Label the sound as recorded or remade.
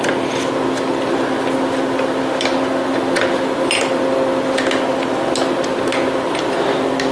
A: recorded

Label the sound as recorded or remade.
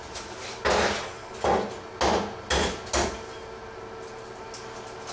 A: recorded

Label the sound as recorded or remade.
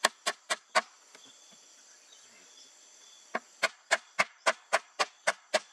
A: remade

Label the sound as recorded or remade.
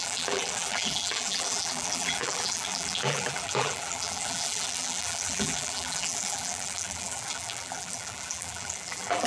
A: remade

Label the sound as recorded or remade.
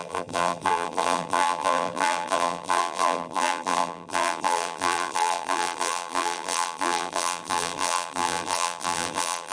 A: remade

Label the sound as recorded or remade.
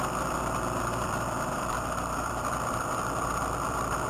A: remade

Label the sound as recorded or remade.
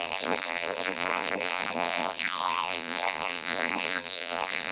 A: remade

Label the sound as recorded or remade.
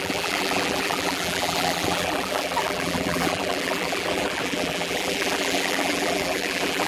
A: remade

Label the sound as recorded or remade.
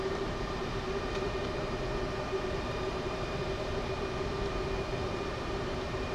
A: remade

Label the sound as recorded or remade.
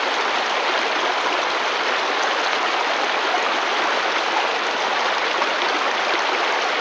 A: recorded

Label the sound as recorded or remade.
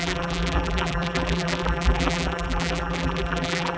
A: remade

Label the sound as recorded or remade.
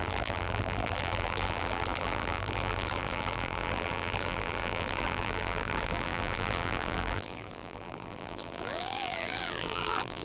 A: remade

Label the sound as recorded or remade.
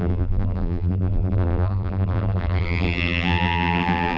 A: remade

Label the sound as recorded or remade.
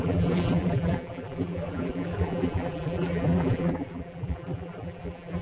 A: remade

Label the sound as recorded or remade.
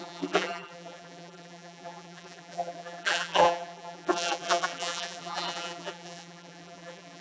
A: remade